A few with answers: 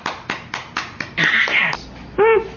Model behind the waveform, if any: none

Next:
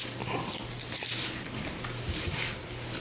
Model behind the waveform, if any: none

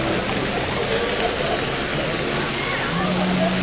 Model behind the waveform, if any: none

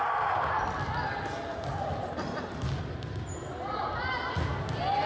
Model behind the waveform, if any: none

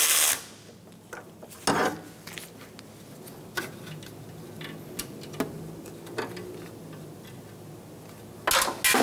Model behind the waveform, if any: none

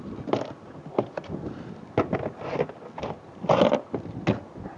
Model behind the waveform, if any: none